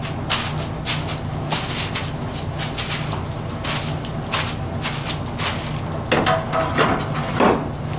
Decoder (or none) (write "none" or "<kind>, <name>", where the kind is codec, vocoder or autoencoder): none